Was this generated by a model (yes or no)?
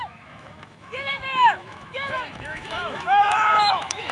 yes